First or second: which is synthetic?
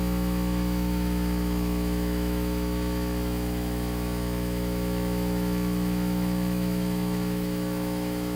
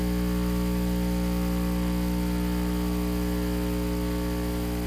first